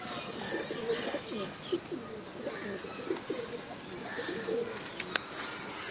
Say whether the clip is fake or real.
real